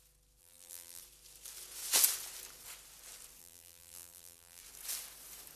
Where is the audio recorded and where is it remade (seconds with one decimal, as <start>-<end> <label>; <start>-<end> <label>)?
0.0-0.4 recorded; 0.4-1.0 remade; 1.0-3.4 recorded; 3.4-4.6 remade; 4.6-5.6 recorded